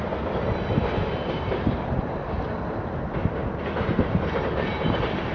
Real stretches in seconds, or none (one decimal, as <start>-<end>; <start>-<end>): 0.0-3.9